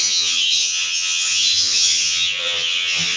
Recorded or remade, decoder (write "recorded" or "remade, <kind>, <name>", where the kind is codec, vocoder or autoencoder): remade, vocoder, HiFi-GAN